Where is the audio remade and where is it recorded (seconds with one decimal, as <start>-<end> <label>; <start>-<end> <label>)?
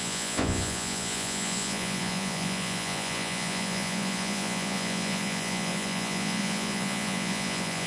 0.0-7.9 remade